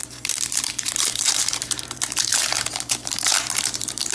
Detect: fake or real fake